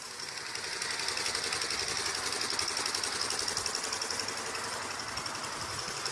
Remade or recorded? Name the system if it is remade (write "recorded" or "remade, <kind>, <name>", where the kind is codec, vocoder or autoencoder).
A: recorded